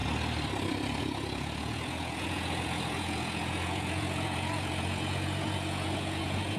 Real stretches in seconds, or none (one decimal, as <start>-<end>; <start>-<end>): 0.0-1.0